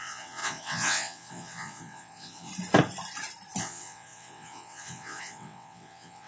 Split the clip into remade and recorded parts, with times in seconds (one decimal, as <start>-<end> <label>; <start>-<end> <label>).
0.0-2.5 remade; 2.5-3.6 recorded; 3.6-6.3 remade